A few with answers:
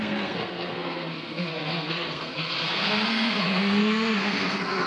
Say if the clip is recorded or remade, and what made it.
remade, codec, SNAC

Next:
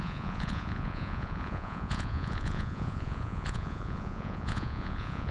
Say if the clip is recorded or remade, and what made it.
remade, vocoder, Vocos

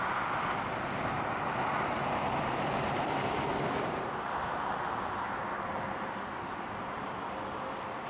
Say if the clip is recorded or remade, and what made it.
recorded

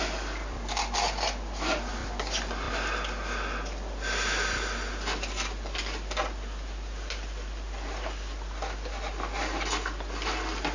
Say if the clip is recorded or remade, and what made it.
recorded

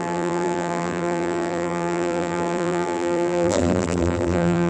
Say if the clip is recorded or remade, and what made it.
remade, vocoder, BigVGAN v2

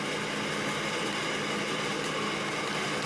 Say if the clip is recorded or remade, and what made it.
recorded